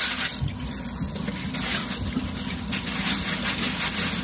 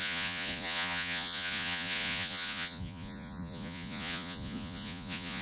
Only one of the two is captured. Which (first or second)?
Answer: first